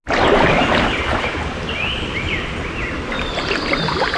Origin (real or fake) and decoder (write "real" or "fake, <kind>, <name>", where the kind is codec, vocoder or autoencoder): real